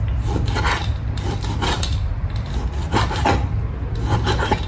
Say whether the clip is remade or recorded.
recorded